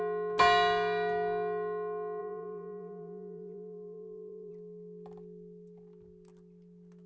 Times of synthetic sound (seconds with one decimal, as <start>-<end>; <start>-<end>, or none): 2.2-4.5